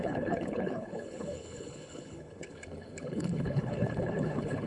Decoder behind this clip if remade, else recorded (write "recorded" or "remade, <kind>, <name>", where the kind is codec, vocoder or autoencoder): remade, codec, HILCodec